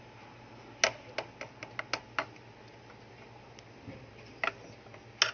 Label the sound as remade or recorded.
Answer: recorded